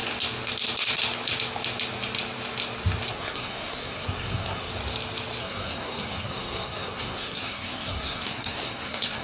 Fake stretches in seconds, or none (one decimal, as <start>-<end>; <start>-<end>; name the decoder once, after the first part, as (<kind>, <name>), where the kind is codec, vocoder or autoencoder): 3.1-4.7 (codec, SNAC); 5.4-9.2